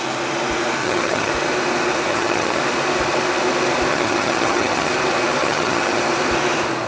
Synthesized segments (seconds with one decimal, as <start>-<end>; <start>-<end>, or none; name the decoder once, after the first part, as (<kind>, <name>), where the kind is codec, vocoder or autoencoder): 0.8-1.3 (vocoder, HiFi-GAN); 2.1-2.6; 3.9-4.9; 5.4-6.0